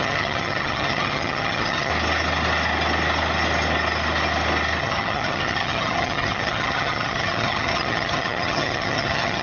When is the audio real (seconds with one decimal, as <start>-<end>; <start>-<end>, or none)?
1.9-4.8